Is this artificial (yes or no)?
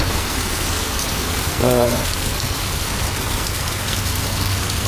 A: yes